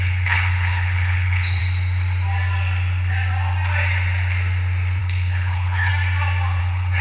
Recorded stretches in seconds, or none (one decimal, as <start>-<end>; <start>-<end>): 1.6-5.0; 5.9-6.6